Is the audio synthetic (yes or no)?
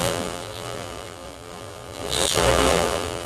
yes